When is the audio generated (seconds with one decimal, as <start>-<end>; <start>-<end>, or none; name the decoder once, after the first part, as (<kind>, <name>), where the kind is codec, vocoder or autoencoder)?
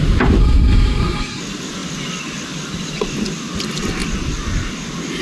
0.4-1.4 (codec, SNAC)